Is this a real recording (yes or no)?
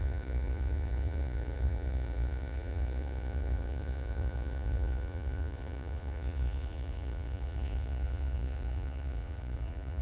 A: no